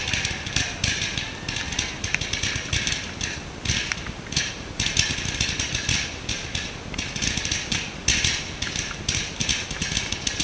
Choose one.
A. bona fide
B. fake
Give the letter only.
A